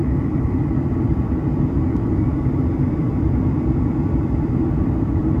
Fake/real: fake